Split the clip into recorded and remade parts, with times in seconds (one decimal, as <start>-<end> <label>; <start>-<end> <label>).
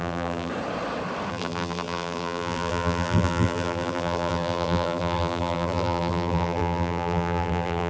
0.0-0.5 remade; 0.5-1.3 recorded; 1.3-7.9 remade